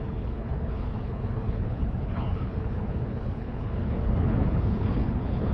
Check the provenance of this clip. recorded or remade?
remade